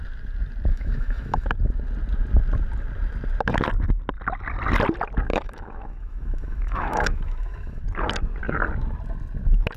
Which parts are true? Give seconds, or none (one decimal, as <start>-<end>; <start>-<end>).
0.0-0.7; 1.5-5.3; 7.8-9.8